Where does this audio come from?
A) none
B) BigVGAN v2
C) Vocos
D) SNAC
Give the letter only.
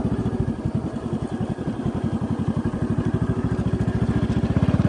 A